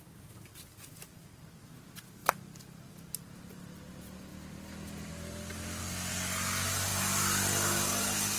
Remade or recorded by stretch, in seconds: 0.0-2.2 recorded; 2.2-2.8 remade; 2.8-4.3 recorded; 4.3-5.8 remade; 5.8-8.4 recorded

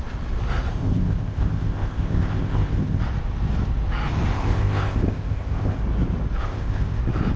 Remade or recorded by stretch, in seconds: 0.0-0.7 recorded; 0.7-3.0 remade; 3.0-4.3 recorded; 4.3-5.8 remade; 5.8-6.4 recorded; 6.4-7.0 remade; 7.0-7.4 recorded

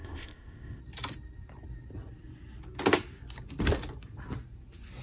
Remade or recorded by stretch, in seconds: 0.0-0.8 remade; 0.8-5.0 recorded